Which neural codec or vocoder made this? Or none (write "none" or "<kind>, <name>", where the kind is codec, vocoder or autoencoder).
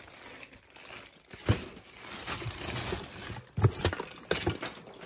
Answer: none